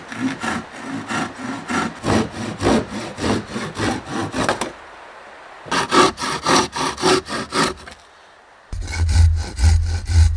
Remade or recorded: recorded